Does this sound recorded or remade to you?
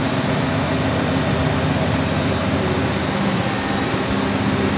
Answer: recorded